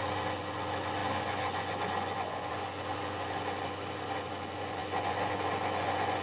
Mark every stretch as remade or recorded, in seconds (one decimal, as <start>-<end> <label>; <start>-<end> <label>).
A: 0.0-6.2 remade